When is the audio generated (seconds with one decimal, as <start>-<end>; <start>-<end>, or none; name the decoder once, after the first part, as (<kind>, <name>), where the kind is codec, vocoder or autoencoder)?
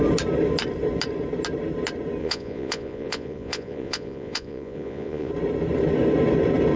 2.2-5.3 (vocoder, Vocos)